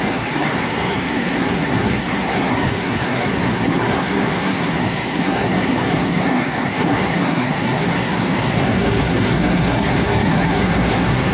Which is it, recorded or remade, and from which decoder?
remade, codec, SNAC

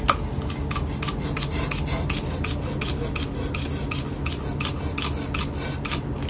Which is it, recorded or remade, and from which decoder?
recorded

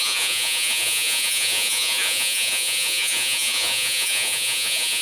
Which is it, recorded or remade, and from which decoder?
remade, vocoder, Vocos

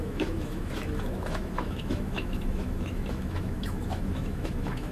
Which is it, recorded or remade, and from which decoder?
remade, autoencoder, DAC-VAE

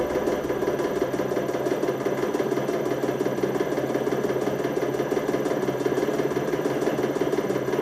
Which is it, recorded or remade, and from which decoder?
recorded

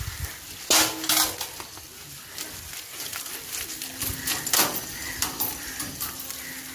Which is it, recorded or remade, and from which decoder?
recorded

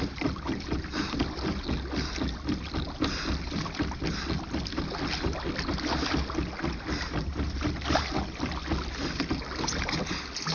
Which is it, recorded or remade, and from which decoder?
recorded